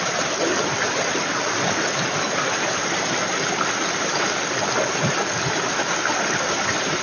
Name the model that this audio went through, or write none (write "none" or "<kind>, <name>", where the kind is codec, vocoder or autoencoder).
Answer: none